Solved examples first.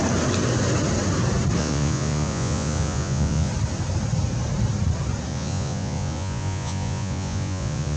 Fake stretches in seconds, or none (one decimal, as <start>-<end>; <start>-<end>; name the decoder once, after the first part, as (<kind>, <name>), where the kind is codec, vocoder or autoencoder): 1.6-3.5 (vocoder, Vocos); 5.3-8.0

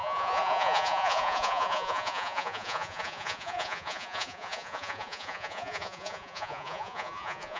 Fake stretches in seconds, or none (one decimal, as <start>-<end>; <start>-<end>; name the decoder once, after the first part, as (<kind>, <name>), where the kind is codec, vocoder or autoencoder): 0.0-7.6 (vocoder, Vocos)

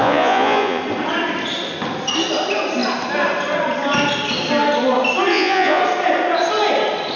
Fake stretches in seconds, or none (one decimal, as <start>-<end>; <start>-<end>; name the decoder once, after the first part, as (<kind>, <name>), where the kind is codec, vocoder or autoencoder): 0.0-0.8 (vocoder, Vocos); 5.3-5.8

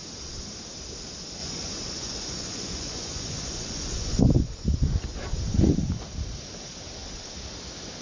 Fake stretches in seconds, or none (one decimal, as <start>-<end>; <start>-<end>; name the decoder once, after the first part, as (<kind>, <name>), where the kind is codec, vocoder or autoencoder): 1.4-4.2 (vocoder, Vocos)

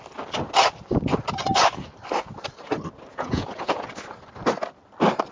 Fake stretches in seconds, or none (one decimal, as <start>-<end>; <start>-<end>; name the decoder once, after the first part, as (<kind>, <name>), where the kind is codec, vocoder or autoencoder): 3.1-3.9 (vocoder, Vocos)

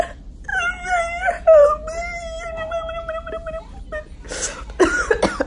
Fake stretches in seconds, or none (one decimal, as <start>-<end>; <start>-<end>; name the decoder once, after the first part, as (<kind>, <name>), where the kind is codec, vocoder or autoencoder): none

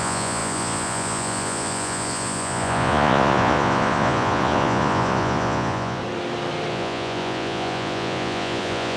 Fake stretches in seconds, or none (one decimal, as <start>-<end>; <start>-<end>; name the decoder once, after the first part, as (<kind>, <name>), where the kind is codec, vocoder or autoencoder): 0.0-6.0 (vocoder, Vocos); 6.7-9.0

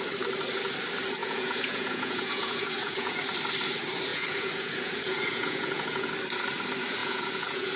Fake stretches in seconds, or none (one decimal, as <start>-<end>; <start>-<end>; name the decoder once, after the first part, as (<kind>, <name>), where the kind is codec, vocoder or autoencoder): 1.2-3.2 (vocoder, Vocos); 4.1-6.1; 7.0-7.8